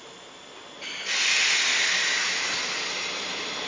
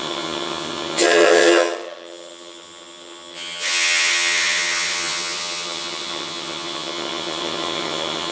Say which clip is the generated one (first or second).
second